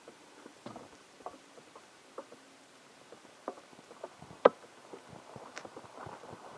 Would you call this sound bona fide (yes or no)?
no